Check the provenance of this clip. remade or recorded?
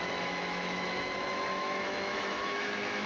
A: remade